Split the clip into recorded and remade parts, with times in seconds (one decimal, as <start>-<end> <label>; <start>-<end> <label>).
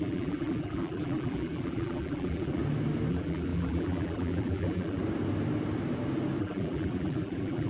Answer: 0.0-2.6 remade; 2.6-3.1 recorded; 3.1-5.0 remade; 5.0-6.4 recorded; 6.4-7.7 remade